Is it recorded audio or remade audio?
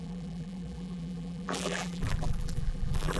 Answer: remade